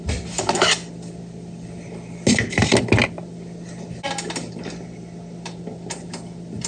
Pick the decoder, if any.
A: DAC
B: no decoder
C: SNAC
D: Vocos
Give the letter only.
B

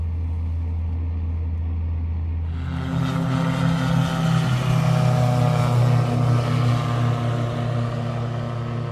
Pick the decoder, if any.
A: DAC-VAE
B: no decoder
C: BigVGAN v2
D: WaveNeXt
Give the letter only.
B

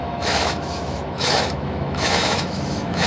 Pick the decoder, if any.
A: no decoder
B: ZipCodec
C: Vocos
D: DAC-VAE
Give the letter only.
D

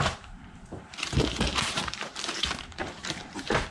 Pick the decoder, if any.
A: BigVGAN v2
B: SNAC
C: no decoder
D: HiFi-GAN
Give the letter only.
A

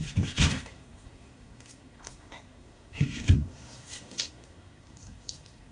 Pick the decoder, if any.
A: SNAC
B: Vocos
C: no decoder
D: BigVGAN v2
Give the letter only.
A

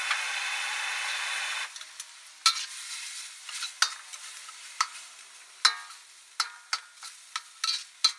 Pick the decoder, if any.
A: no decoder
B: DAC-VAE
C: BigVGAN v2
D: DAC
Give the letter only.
A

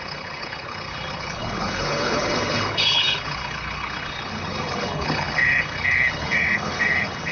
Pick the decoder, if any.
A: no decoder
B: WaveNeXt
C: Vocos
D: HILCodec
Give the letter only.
D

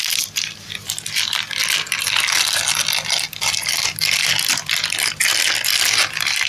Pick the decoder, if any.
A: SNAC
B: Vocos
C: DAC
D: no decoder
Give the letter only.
D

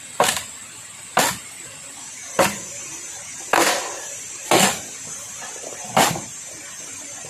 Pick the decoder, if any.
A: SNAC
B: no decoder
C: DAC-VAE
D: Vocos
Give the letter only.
B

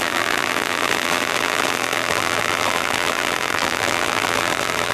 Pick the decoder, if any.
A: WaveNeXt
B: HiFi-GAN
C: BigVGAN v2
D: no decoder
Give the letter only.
C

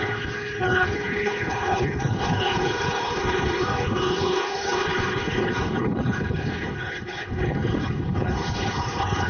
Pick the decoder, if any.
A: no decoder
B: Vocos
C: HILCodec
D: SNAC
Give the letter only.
C